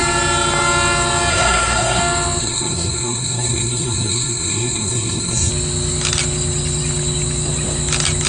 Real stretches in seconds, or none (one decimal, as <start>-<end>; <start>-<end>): 0.0-1.3; 2.0-2.4; 5.5-8.3